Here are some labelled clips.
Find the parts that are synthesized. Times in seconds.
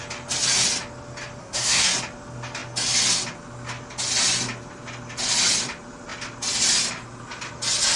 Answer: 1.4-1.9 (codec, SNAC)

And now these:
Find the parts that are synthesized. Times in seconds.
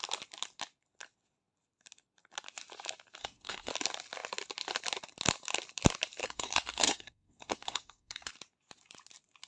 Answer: 3.2-3.7 (codec, SNAC); 6.2-8.3